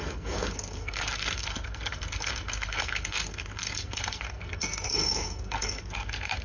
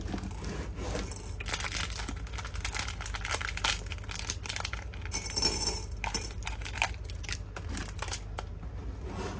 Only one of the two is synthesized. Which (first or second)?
first